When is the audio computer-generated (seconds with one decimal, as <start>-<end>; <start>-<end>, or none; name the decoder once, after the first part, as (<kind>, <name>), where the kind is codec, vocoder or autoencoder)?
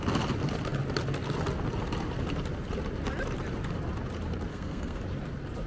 4.5-5.0 (codec, SNAC)